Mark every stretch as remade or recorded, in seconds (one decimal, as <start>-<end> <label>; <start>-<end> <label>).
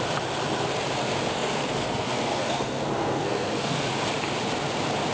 0.0-1.3 recorded; 1.3-3.9 remade; 3.9-5.1 recorded